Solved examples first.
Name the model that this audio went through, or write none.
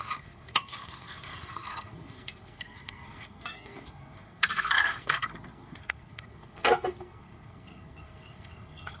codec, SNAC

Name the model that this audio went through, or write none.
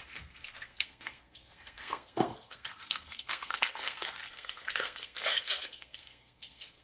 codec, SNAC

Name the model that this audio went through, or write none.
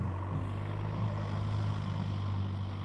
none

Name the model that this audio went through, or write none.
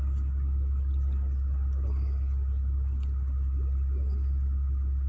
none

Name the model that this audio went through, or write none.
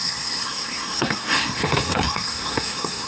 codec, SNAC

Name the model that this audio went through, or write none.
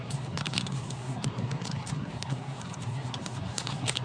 codec, SNAC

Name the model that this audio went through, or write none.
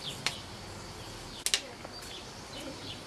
none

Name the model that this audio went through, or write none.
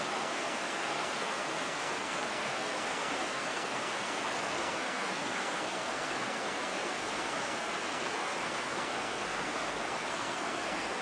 codec, SNAC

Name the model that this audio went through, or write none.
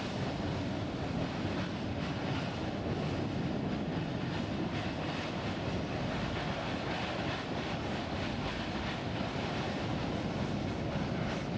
none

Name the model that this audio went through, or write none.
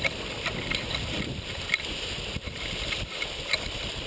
none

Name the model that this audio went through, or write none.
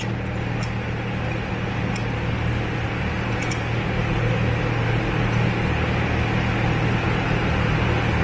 none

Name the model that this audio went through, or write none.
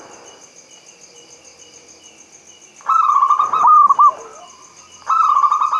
none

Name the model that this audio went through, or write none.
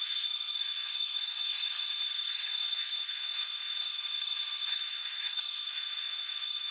codec, SNAC